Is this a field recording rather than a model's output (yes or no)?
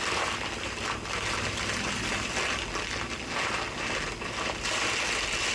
yes